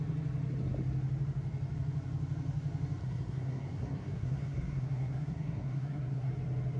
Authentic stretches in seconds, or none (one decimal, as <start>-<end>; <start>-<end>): 0.0-3.0; 6.3-6.8